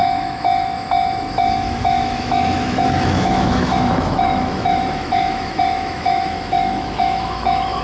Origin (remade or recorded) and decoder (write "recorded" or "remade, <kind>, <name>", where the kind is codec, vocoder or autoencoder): remade, autoencoder, DAC-VAE